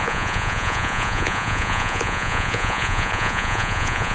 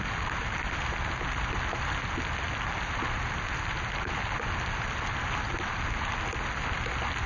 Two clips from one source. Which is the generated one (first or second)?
first